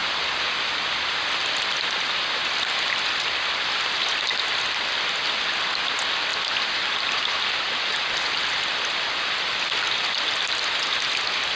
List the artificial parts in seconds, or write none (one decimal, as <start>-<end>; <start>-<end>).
6.3-8.0